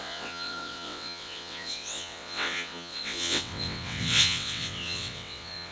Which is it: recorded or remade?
remade